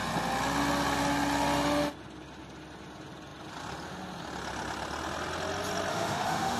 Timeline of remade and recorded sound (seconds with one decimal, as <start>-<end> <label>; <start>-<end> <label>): 0.0-5.9 recorded; 5.9-6.6 remade